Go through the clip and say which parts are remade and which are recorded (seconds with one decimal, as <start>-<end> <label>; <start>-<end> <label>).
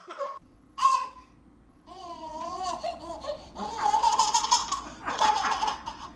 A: 0.0-1.0 remade; 1.0-1.7 recorded; 1.7-4.6 remade; 4.6-5.1 recorded; 5.1-6.2 remade